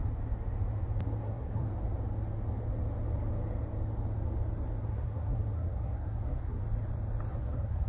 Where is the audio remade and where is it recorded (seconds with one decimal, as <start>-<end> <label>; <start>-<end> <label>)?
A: 0.0-1.2 recorded; 1.2-1.7 remade; 1.7-4.9 recorded; 4.9-6.6 remade; 6.6-7.3 recorded; 7.3-7.9 remade